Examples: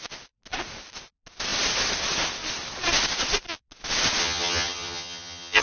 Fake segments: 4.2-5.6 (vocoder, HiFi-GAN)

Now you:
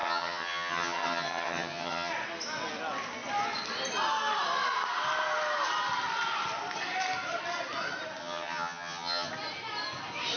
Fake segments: 0.0-2.1 (vocoder, HiFi-GAN); 8.2-9.3

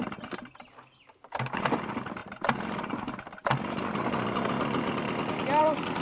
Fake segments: none

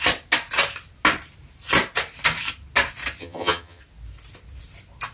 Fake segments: 3.2-3.8 (vocoder, HiFi-GAN)

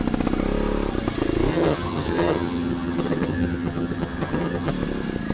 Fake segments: 1.5-4.7 (vocoder, HiFi-GAN)

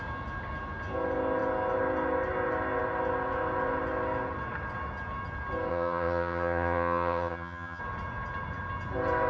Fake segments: 5.7-7.8 (vocoder, HiFi-GAN)

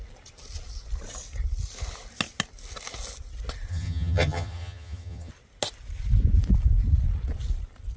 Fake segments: 3.7-5.3 (vocoder, HiFi-GAN)